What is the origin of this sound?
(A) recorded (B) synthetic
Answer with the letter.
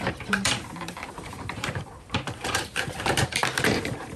B